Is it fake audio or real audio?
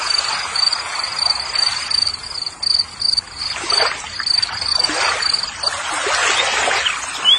real